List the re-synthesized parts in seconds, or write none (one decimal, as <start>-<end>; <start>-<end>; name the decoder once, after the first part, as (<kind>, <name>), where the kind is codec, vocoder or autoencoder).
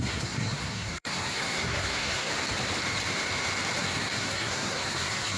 0.0-2.3 (codec, SNAC); 3.8-5.4